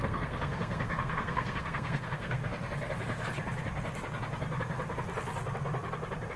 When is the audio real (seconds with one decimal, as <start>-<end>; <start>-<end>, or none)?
2.4-6.4